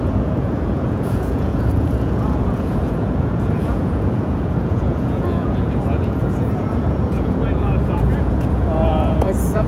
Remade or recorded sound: remade